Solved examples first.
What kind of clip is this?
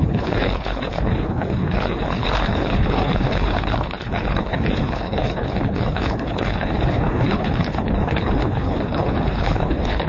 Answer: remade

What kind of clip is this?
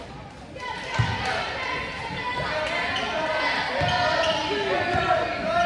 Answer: recorded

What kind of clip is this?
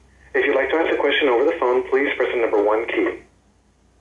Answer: recorded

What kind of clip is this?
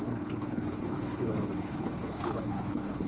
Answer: remade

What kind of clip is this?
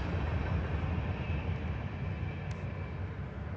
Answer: recorded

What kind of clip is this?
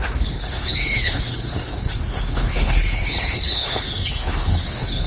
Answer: remade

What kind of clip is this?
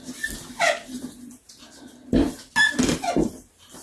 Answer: recorded